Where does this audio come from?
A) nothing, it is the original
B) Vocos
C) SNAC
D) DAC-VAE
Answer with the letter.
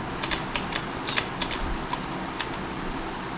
A